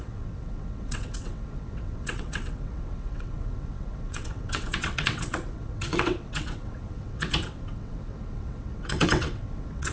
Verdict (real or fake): fake